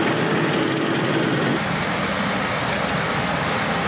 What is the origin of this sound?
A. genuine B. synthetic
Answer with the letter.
A